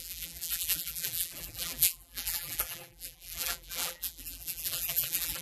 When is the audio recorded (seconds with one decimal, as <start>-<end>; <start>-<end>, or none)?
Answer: none